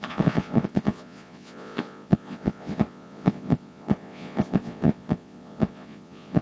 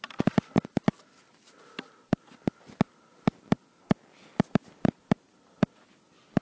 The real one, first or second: second